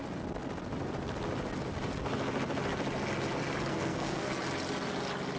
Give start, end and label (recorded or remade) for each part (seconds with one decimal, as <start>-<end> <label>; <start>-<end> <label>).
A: 0.0-3.7 recorded; 3.7-4.3 remade; 4.3-5.4 recorded